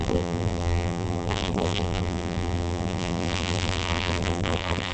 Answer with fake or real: fake